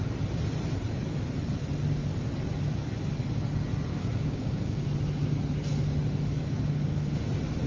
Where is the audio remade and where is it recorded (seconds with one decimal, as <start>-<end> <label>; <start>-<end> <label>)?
0.0-3.9 recorded; 3.9-4.9 remade; 4.9-6.4 recorded; 6.4-7.2 remade; 7.2-7.7 recorded